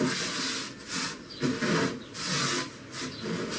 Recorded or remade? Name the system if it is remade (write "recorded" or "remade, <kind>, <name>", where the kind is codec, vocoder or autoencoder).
recorded